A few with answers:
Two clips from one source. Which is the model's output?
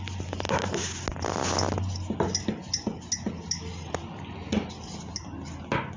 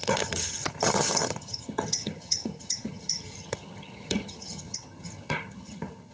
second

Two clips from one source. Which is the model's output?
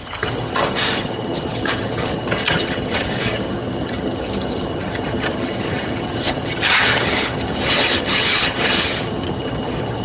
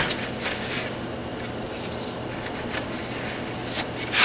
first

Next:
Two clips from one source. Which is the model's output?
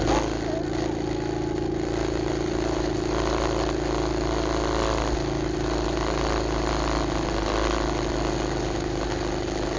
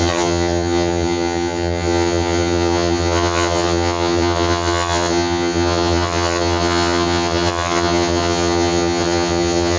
second